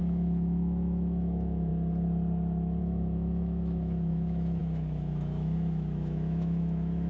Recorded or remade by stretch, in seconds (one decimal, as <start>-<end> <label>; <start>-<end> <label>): 0.0-1.7 remade; 1.7-2.8 recorded; 2.8-7.1 remade

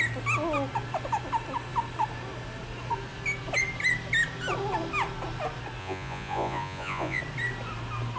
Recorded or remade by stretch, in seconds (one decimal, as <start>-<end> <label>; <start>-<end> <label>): 0.0-5.8 recorded; 5.8-7.2 remade; 7.2-8.2 recorded